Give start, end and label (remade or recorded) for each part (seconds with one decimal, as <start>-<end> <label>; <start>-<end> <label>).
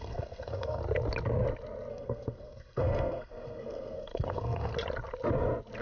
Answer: 0.0-0.8 remade; 0.8-1.9 recorded; 1.9-4.7 remade; 4.7-5.8 recorded